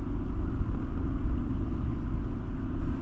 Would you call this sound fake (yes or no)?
no